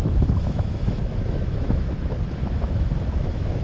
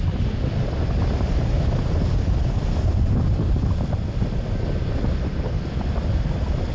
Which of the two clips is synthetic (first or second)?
first